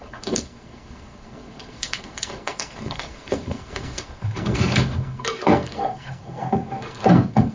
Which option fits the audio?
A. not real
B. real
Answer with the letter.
A